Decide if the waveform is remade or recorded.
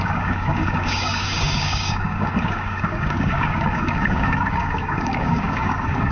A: remade